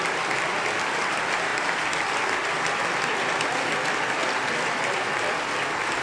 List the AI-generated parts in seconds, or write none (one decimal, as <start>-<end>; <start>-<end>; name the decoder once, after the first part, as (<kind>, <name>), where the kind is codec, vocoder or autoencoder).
none